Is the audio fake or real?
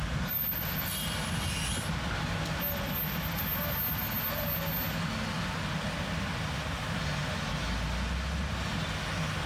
real